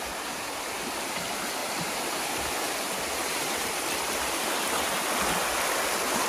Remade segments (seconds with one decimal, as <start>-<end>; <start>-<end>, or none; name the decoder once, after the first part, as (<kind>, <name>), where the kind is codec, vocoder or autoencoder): 1.6-3.7 (vocoder, BigVGAN v2)